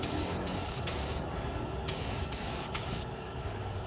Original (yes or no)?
no